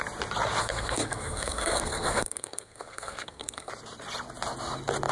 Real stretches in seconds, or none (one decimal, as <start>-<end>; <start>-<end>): 0.0-0.6; 3.7-5.1

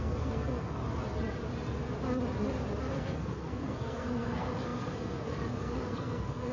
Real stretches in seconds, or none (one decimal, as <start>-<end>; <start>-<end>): 0.8-2.9

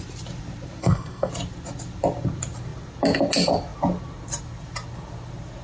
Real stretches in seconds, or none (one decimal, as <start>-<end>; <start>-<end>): 0.0-0.8; 1.3-5.6